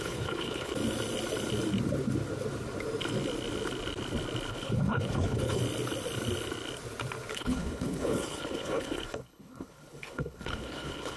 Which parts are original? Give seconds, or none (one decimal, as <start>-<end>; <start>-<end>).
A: 0.7-4.5; 5.6-7.3